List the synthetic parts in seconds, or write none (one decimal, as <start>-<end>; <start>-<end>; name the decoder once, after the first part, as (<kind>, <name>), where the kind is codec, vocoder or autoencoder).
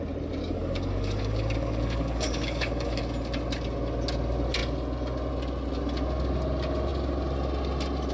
0.4-3.0 (codec, DAC)